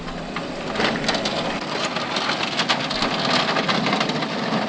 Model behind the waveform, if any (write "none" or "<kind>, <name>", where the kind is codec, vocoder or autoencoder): none